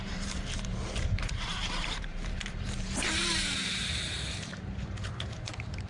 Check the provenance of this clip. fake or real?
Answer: fake